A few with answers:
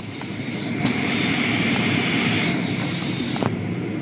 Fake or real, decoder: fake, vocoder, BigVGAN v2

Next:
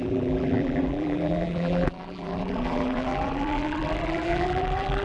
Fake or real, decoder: fake, vocoder, BigVGAN v2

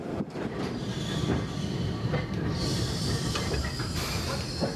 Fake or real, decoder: fake, vocoder, BigVGAN v2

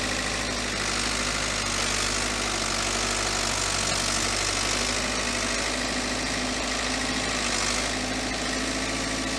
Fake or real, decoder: real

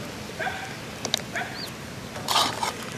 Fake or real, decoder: real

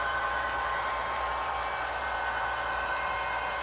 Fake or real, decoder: fake, vocoder, BigVGAN v2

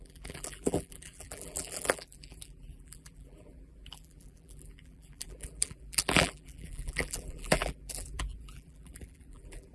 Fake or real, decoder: fake, vocoder, BigVGAN v2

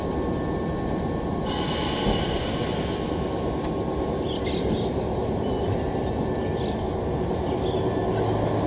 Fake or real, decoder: real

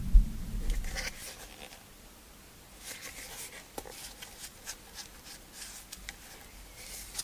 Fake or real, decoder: real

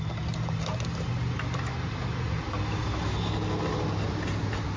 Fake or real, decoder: real